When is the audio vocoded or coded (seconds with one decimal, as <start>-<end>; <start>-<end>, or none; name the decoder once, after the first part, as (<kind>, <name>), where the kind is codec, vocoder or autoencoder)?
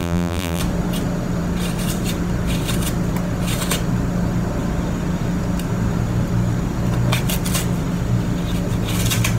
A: 0.0-0.6 (vocoder, BigVGAN v2)